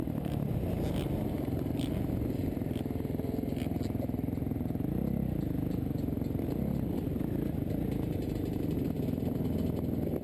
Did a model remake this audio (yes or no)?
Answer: no